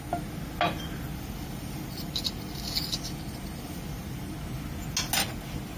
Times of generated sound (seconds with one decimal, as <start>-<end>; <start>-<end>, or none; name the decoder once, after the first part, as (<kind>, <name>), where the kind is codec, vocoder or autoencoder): 1.1-4.6 (vocoder, BigVGAN v2)